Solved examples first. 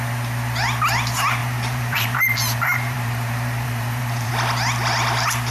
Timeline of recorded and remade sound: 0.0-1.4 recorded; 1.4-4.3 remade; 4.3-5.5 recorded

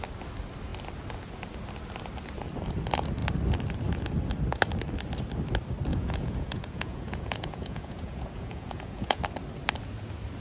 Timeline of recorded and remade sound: 0.0-5.9 recorded; 5.9-9.2 remade; 9.2-10.4 recorded

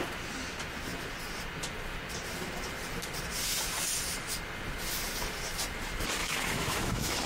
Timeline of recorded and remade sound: 0.0-6.2 recorded; 6.2-7.3 remade

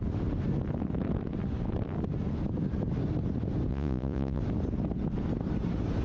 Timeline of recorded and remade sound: 0.0-3.7 recorded; 3.7-4.4 remade; 4.4-6.0 recorded

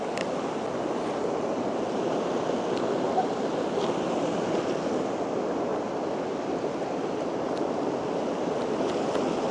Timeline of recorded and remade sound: 0.0-9.5 recorded

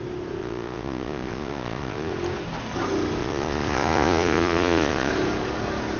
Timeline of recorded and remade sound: 0.0-0.4 recorded; 0.4-2.1 remade; 2.1-3.2 recorded; 3.2-5.1 remade; 5.1-6.0 recorded